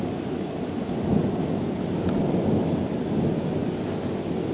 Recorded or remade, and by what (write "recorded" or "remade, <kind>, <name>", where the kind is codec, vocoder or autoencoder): recorded